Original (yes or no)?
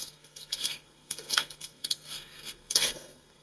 no